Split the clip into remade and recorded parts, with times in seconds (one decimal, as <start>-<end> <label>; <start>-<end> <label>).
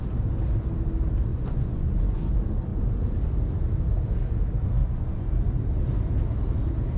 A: 0.0-1.3 recorded; 1.3-2.2 remade; 2.2-4.8 recorded; 4.8-5.3 remade; 5.3-7.0 recorded